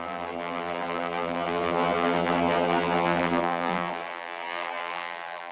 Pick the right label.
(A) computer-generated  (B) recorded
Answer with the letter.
A